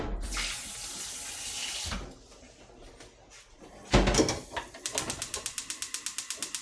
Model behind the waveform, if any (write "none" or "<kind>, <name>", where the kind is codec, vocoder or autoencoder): none